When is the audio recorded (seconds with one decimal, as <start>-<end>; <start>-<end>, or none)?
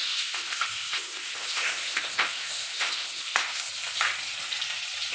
3.7-5.1